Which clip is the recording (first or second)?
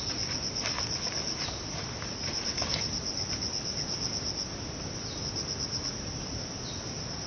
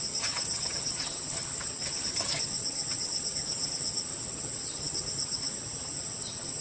first